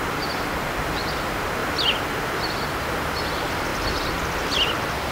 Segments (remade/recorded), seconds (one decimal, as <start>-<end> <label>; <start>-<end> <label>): 0.0-5.1 recorded